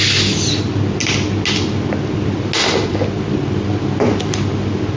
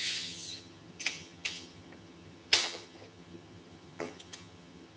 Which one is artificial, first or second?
second